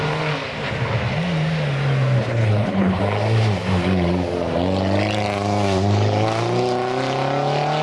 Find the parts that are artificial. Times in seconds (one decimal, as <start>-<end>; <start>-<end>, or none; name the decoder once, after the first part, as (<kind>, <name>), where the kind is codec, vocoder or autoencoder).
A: 2.2-3.0 (codec, HILCodec)